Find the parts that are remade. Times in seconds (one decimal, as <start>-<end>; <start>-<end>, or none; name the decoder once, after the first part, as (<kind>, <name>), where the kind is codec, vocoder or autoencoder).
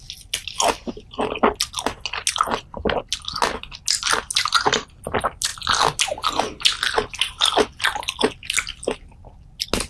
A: none